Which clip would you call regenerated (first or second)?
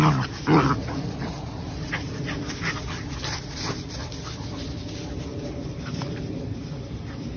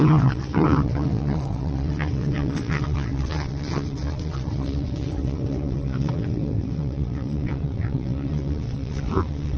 second